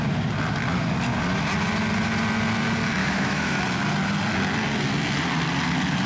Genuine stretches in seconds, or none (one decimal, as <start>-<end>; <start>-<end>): 0.0-3.0; 3.6-6.1